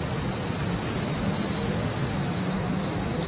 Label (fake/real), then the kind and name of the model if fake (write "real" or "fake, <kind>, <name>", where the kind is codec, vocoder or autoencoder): real